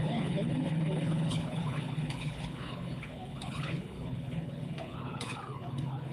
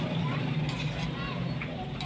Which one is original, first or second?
second